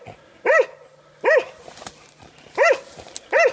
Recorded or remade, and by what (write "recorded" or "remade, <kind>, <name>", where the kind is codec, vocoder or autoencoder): recorded